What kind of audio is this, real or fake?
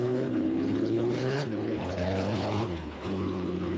fake